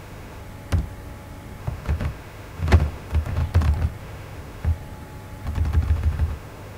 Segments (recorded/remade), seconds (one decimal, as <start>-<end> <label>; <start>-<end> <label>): 0.0-0.4 remade; 0.4-1.6 recorded; 1.6-3.4 remade; 3.4-4.0 recorded; 4.0-4.7 remade; 4.7-5.9 recorded; 5.9-6.8 remade